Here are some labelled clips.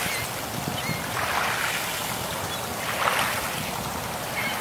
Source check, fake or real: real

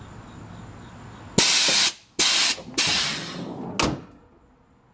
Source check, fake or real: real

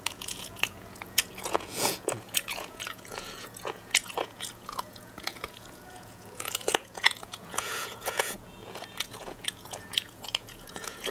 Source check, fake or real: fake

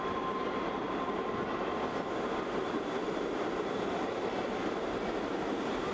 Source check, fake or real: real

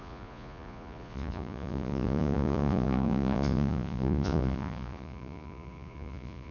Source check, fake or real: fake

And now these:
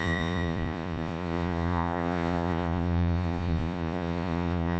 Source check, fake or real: fake